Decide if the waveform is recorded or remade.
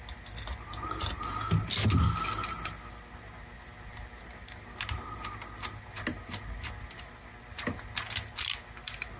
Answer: recorded